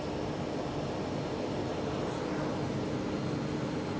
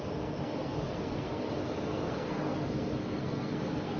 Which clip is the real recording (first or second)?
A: first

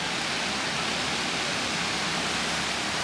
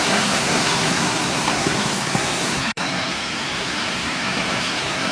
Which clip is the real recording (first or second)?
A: first